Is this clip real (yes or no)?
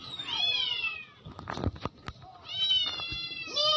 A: yes